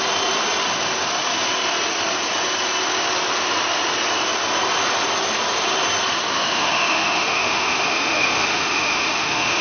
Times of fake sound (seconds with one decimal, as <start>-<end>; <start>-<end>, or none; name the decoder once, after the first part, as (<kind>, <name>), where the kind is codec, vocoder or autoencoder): 6.3-9.6 (autoencoder, DAC-VAE)